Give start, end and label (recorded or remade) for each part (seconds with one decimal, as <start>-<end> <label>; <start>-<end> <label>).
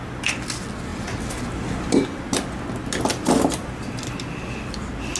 0.0-5.2 recorded